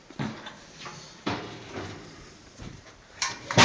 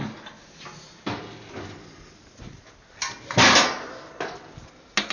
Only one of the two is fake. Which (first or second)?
first